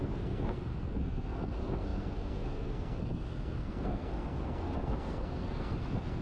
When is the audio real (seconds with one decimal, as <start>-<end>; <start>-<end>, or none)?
none